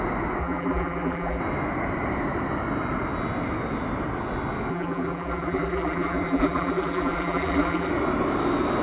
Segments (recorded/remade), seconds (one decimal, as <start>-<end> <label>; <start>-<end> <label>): 0.0-0.4 recorded; 0.4-1.4 remade; 1.4-4.7 recorded; 4.7-7.9 remade; 7.9-8.8 recorded